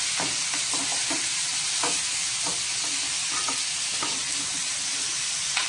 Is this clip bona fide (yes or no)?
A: yes